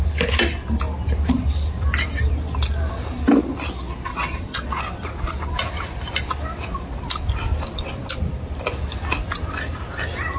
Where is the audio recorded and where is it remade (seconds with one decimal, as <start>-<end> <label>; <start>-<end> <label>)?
0.0-4.1 recorded; 4.1-4.8 remade; 4.8-10.4 recorded